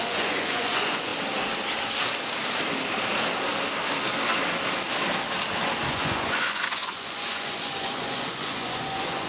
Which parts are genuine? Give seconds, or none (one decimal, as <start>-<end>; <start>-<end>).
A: 1.1-5.9